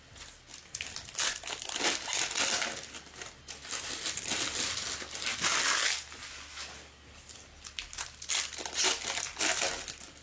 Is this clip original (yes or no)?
yes